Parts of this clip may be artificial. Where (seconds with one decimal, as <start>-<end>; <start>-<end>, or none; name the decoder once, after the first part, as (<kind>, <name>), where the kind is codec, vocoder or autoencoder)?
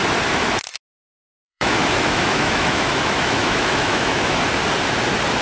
1.2-4.4 (autoencoder, DAC-VAE)